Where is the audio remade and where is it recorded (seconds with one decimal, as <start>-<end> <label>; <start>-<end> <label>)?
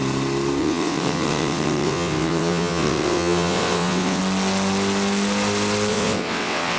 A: 0.0-0.6 recorded; 0.6-4.2 remade; 4.2-5.9 recorded; 5.9-6.8 remade